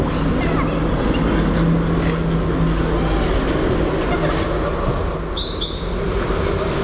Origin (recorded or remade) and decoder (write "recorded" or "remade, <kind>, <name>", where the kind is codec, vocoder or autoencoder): recorded